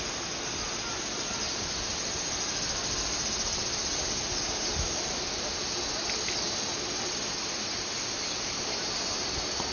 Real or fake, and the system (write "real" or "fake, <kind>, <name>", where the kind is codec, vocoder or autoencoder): real